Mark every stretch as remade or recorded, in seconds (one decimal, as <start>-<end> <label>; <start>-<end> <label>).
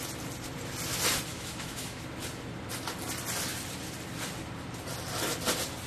0.0-1.3 recorded; 1.3-2.0 remade; 2.0-5.9 recorded